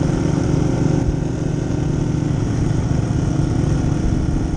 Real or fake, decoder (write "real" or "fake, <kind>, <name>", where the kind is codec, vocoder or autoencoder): real